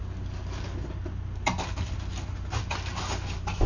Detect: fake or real real